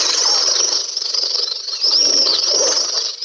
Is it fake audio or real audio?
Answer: fake